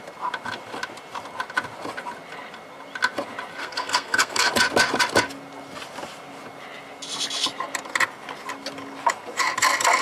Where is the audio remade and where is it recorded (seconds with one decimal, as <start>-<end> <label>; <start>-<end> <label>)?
0.0-3.6 recorded; 3.6-4.5 remade; 4.5-10.0 recorded